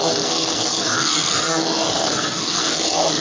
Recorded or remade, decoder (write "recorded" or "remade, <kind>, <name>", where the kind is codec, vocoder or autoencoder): remade, codec, SNAC